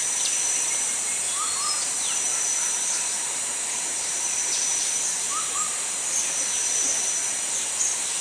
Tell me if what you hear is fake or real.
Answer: fake